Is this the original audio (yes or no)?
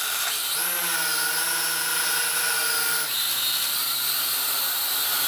yes